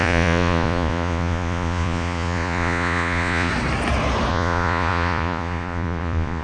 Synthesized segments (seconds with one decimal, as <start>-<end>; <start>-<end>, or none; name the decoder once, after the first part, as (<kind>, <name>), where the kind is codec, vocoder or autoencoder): 0.0-3.5 (vocoder, Vocos); 4.3-6.4